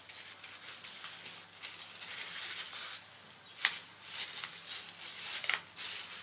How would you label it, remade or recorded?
recorded